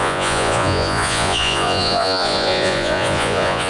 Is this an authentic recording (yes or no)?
no